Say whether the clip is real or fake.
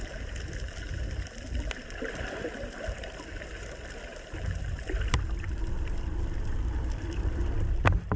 fake